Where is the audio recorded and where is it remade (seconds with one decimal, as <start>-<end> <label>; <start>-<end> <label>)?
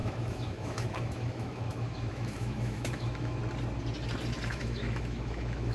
0.0-3.4 remade; 3.4-4.5 recorded; 4.5-5.7 remade